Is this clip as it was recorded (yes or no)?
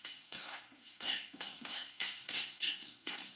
no